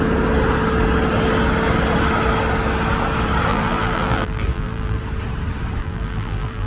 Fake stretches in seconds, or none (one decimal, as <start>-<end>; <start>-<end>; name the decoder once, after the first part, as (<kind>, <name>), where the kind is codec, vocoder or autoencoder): 3.5-5.0 (vocoder, BigVGAN v2); 5.8-6.7